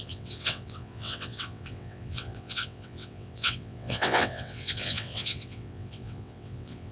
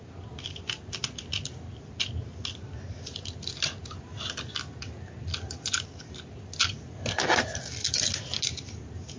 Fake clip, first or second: first